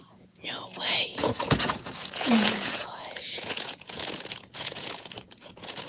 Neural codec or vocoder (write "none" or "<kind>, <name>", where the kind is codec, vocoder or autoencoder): vocoder, Vocos